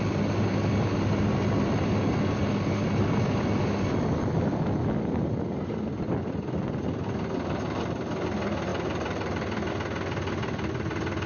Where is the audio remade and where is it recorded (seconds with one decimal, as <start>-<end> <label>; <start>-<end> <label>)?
0.0-8.7 recorded; 8.7-9.7 remade; 9.7-11.3 recorded